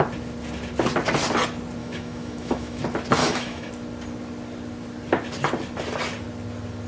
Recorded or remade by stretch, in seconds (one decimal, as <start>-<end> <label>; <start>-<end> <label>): 0.0-1.8 recorded; 1.8-2.8 remade; 2.8-3.2 recorded; 3.2-3.7 remade; 3.7-6.9 recorded

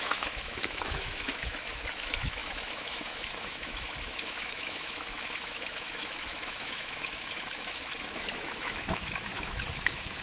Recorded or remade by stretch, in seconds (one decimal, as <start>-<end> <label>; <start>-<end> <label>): 0.0-10.2 remade

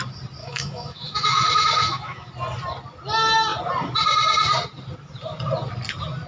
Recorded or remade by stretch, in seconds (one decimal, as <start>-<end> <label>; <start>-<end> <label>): 0.0-0.4 recorded; 0.4-2.3 remade; 2.3-6.3 recorded

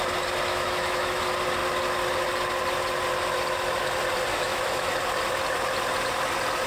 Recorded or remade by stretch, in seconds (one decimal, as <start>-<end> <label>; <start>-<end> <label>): 0.0-0.5 recorded; 0.5-1.2 remade; 1.2-4.3 recorded; 4.3-4.9 remade; 4.9-6.7 recorded

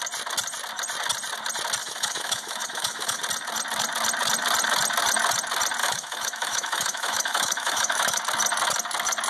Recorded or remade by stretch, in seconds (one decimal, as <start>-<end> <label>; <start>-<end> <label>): 0.0-1.8 recorded; 1.8-3.2 remade; 3.2-5.8 recorded; 5.8-8.2 remade; 8.2-9.3 recorded

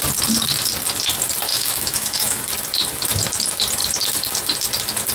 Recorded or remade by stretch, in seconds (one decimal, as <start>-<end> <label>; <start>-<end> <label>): 0.0-1.5 recorded; 1.5-2.4 remade; 2.4-5.1 recorded